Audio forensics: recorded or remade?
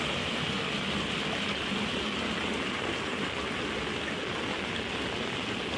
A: recorded